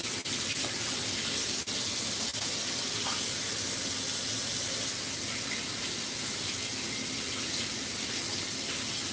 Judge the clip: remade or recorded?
recorded